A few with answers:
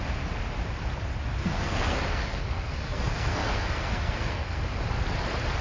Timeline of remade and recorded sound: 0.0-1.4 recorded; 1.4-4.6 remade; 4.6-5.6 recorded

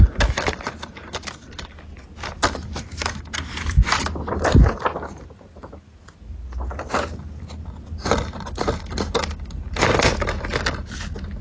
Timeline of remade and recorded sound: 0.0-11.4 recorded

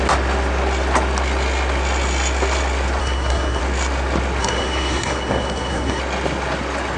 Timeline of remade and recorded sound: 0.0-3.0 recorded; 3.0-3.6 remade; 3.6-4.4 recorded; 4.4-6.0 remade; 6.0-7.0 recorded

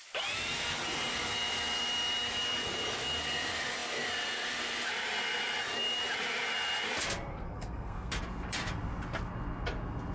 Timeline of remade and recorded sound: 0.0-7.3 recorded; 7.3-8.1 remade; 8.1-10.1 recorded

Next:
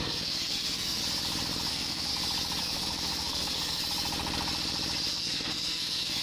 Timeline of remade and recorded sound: 0.0-1.0 remade; 1.0-1.7 recorded; 1.7-2.1 remade; 2.1-2.6 recorded; 2.6-3.8 remade; 3.8-5.1 recorded; 5.1-6.2 remade